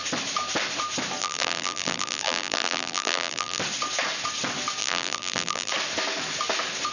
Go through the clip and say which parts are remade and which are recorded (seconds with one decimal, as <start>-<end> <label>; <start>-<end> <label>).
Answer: 0.0-1.2 recorded; 1.2-3.6 remade; 3.6-4.8 recorded; 4.8-5.7 remade; 5.7-6.9 recorded

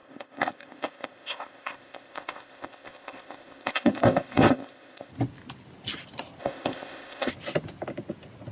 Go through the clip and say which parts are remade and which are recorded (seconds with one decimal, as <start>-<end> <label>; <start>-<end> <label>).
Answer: 0.0-5.1 remade; 5.1-6.4 recorded; 6.4-7.3 remade; 7.3-8.5 recorded

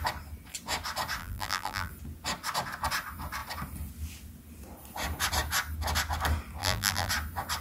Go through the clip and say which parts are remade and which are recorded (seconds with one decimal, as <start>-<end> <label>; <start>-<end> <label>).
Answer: 0.0-1.2 recorded; 1.2-1.9 remade; 1.9-6.6 recorded; 6.6-7.1 remade; 7.1-7.6 recorded